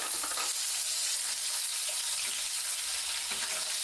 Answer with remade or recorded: recorded